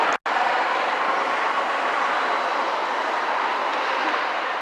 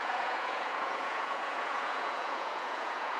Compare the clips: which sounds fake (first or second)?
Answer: second